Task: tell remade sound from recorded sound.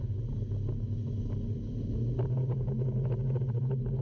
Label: recorded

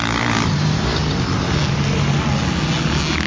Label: recorded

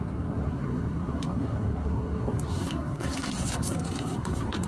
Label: remade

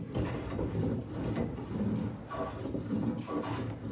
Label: recorded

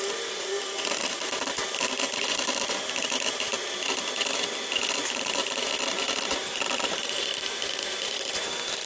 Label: recorded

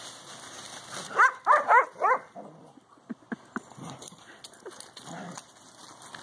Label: recorded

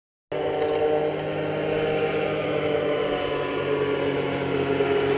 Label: recorded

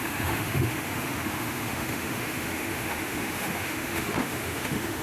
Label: remade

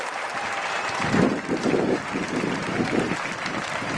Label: remade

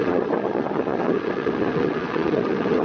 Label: remade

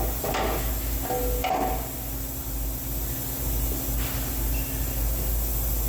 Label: recorded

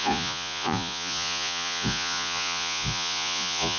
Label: remade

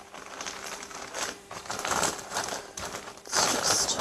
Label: remade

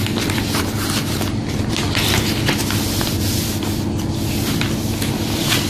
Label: recorded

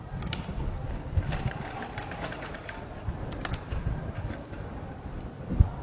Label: recorded